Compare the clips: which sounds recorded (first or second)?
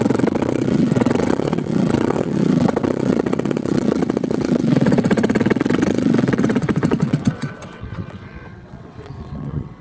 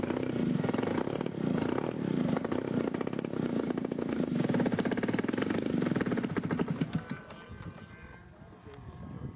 second